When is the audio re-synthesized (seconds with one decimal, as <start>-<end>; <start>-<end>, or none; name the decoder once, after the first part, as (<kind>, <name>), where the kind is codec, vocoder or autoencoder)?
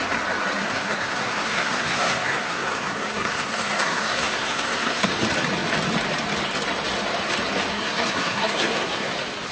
0.6-5.1 (codec, SNAC); 7.7-9.1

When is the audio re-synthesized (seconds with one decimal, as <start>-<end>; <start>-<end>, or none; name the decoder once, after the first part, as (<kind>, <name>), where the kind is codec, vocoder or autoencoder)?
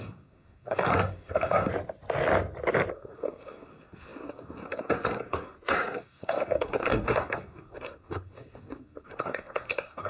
0.0-1.7 (codec, SNAC); 2.9-10.1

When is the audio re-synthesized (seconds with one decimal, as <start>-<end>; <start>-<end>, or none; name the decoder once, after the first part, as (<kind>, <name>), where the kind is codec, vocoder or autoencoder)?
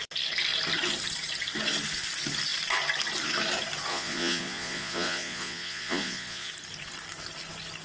3.9-6.5 (vocoder, Vocos)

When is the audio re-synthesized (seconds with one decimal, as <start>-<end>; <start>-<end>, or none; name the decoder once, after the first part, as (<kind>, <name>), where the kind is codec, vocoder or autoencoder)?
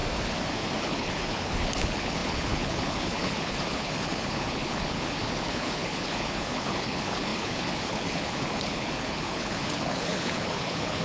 0.8-11.0 (codec, HILCodec)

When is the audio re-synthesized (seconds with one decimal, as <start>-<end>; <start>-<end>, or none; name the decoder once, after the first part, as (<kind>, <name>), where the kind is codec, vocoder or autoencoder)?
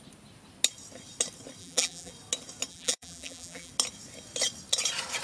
1.6-2.1 (vocoder, BigVGAN v2); 2.7-3.7